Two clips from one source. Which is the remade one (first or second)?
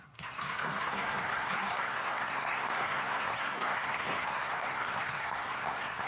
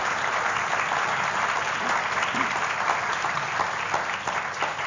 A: first